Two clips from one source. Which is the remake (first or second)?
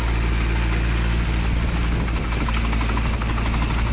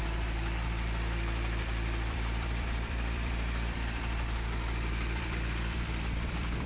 second